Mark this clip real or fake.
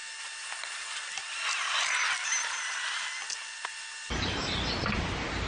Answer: real